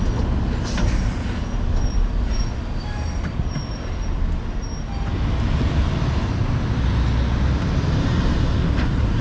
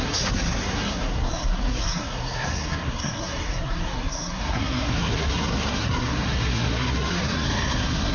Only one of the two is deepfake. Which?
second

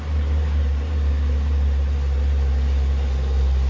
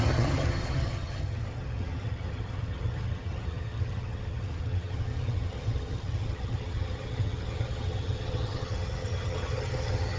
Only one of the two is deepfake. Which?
second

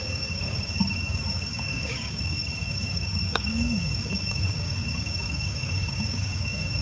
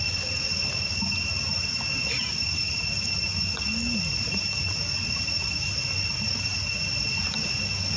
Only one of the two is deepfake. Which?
first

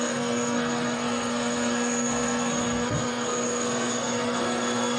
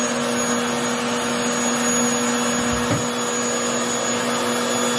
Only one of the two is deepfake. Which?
first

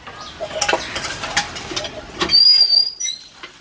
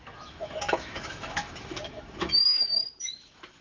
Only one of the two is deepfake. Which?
second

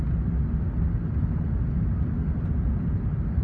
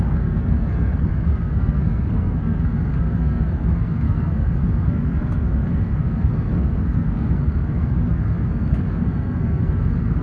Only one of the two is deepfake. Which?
second